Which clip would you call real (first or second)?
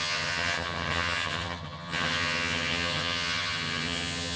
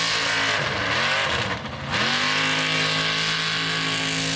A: second